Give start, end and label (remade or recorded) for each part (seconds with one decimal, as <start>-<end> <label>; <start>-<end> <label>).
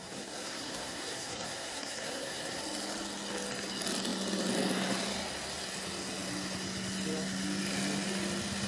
0.0-2.6 remade; 2.6-8.7 recorded